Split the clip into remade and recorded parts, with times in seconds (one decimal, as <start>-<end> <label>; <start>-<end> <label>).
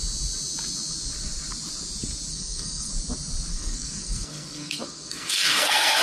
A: 0.0-2.3 recorded; 2.3-2.9 remade; 2.9-3.5 recorded; 3.5-6.0 remade